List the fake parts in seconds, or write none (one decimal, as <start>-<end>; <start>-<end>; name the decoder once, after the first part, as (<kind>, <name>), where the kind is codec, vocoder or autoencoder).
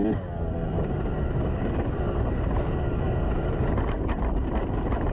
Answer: 0.6-3.6 (vocoder, BigVGAN v2)